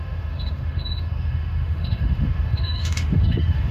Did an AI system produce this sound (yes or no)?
yes